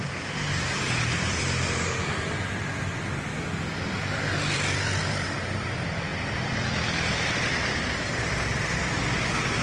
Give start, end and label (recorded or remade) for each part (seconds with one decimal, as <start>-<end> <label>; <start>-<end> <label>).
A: 0.0-9.6 remade